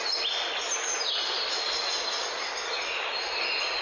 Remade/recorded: recorded